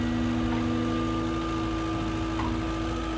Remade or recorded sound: recorded